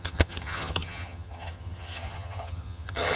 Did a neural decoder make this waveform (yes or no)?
yes